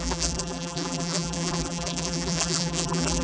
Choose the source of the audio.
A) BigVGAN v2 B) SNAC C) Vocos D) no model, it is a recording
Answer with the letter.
A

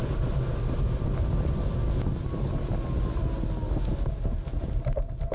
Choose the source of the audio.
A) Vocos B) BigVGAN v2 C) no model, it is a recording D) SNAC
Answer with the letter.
C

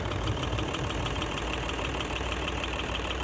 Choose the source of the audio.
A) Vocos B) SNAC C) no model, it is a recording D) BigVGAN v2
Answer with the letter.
D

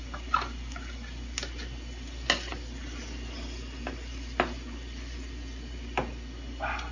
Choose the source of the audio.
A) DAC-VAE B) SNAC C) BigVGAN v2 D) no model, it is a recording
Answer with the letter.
D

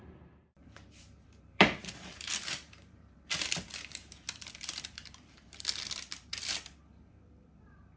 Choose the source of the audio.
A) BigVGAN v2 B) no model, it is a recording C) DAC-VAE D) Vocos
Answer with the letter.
A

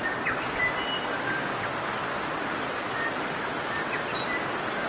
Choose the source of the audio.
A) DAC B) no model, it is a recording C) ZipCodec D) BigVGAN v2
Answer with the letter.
B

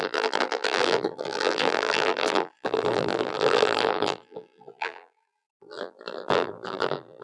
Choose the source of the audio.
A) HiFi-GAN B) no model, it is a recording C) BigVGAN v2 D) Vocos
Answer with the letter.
C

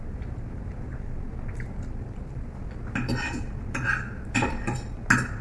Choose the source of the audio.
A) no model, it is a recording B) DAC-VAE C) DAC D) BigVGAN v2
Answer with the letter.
A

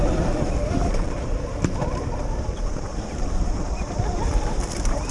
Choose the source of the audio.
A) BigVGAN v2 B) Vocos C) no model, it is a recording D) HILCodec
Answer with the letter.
A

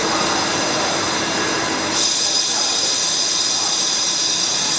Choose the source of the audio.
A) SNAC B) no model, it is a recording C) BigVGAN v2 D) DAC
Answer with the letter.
C